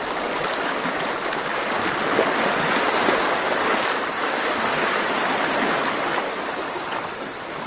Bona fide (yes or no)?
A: yes